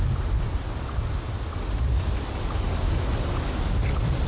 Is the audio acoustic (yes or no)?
yes